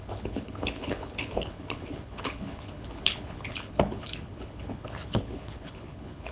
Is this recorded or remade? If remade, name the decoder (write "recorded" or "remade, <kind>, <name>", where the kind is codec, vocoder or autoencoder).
remade, codec, HILCodec